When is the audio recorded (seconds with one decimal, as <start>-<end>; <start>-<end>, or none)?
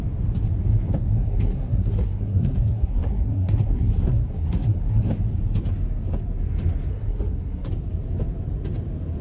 0.0-1.0; 5.1-6.9; 7.7-9.2